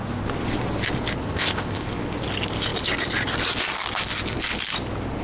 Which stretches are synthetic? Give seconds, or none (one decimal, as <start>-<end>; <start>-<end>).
1.2-1.9